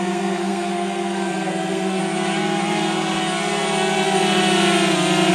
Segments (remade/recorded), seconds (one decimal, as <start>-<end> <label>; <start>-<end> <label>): 0.0-2.0 remade; 2.0-5.3 recorded